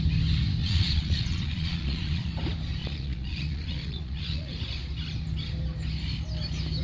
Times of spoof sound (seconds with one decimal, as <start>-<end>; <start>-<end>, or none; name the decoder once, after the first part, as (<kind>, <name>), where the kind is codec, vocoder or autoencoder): 0.6-2.3 (vocoder, Vocos); 2.8-4.5